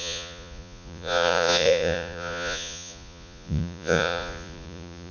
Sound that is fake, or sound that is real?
fake